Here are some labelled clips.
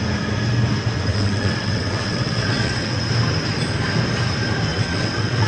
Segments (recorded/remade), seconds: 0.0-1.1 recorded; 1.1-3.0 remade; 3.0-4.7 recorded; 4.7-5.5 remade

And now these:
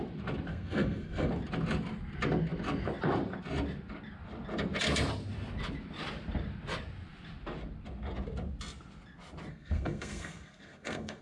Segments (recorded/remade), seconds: 0.0-0.5 recorded; 0.5-1.3 remade; 1.3-9.5 recorded; 9.5-11.2 remade

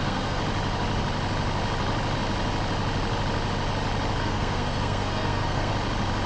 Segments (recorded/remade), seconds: 0.0-0.4 remade; 0.4-4.2 recorded; 4.2-5.7 remade; 5.7-6.3 recorded

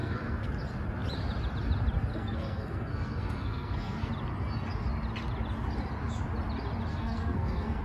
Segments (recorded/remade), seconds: 0.0-0.5 remade; 0.5-2.1 recorded; 2.1-4.1 remade; 4.1-6.9 recorded; 6.9-7.8 remade

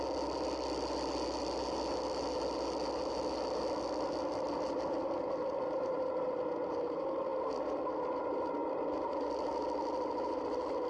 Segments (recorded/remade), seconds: 0.0-7.3 recorded; 7.3-8.0 remade; 8.0-10.9 recorded

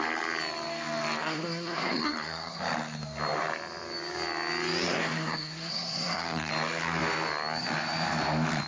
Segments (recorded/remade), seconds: 0.0-1.2 recorded; 1.2-2.6 remade; 2.6-4.9 recorded; 4.9-6.5 remade; 6.5-8.7 recorded